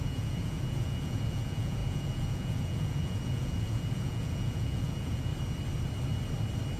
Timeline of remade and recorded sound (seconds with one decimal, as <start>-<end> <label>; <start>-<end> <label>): 0.0-5.3 remade; 5.3-6.8 recorded